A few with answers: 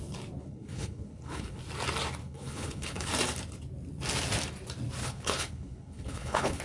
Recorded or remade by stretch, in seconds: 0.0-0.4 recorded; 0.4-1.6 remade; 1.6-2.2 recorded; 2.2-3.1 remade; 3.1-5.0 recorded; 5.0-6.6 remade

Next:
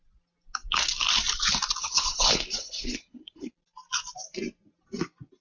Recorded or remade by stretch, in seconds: 0.0-1.8 recorded; 1.8-3.5 remade; 3.5-5.4 recorded

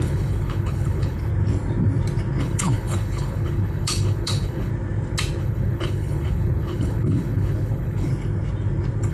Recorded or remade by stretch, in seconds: 0.0-1.3 remade; 1.3-2.4 recorded; 2.4-4.7 remade; 4.7-5.4 recorded; 5.4-8.1 remade; 8.1-9.1 recorded

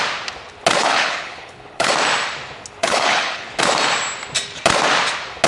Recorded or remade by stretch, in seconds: 0.0-0.8 recorded; 0.8-1.9 remade; 1.9-2.8 recorded; 2.8-3.6 remade; 3.6-5.5 recorded

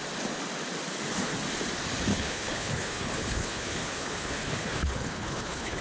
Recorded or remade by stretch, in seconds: 0.0-2.1 recorded; 2.1-5.8 remade

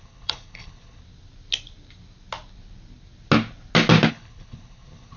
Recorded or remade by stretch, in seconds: 0.0-1.0 remade; 1.0-4.1 recorded; 4.1-5.2 remade